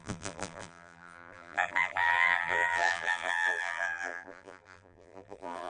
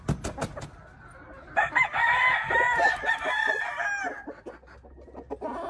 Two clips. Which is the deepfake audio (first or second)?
first